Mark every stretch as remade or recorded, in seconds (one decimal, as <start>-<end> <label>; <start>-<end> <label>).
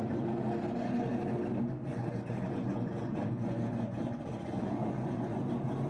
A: 0.0-1.9 recorded; 1.9-5.4 remade; 5.4-5.9 recorded